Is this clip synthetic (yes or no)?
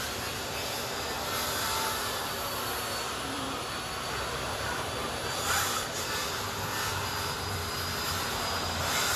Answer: yes